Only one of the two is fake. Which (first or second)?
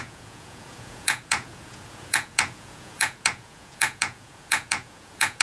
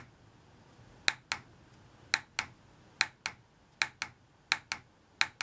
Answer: first